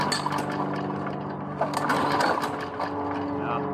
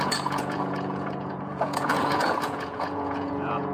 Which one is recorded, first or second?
first